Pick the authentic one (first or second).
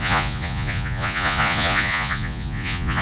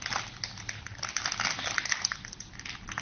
second